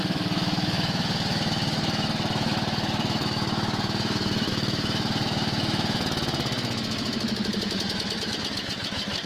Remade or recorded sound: remade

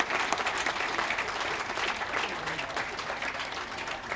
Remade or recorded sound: recorded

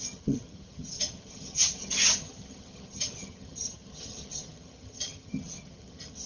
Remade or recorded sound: remade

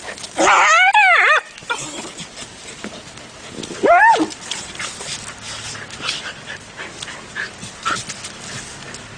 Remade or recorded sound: recorded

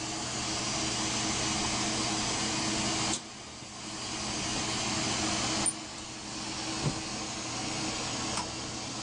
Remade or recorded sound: recorded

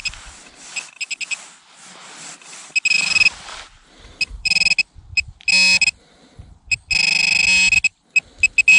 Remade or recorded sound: recorded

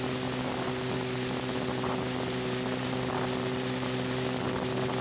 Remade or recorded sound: recorded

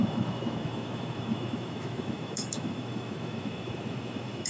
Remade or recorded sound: remade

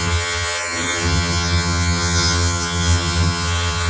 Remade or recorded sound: remade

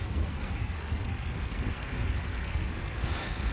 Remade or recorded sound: remade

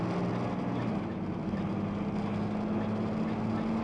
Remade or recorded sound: recorded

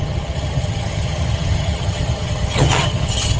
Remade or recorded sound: remade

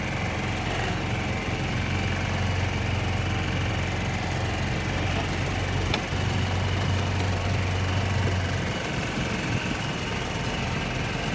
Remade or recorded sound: recorded